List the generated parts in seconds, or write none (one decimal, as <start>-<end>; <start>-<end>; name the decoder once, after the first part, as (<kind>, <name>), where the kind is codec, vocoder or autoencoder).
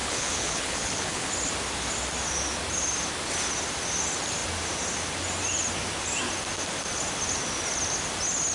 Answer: 0.0-1.3 (codec, HILCodec)